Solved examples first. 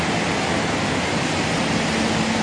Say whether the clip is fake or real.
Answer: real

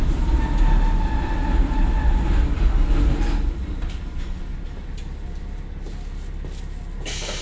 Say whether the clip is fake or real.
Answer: real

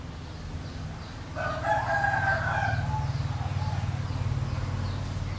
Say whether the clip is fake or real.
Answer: real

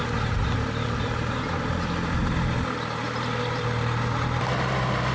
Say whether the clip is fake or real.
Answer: real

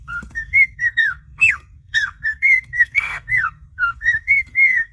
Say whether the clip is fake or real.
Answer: fake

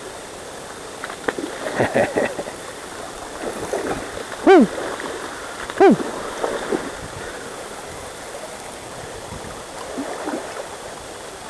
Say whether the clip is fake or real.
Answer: real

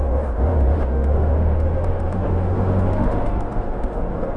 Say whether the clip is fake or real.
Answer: fake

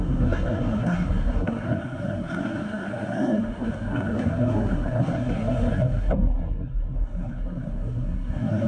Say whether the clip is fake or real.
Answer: fake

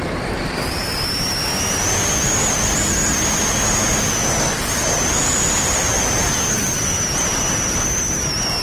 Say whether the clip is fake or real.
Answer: real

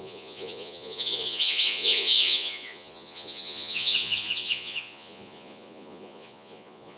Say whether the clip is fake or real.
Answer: fake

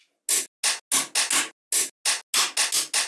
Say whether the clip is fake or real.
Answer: real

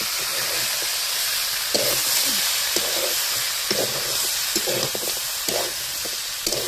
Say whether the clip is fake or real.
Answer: real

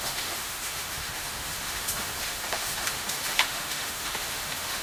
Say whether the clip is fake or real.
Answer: fake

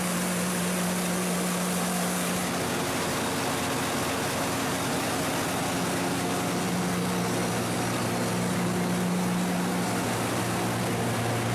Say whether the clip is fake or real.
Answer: real